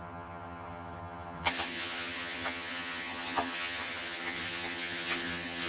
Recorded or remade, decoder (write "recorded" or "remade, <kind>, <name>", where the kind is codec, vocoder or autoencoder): remade, vocoder, HiFi-GAN